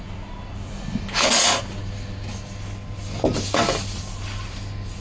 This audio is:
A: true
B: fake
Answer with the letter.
A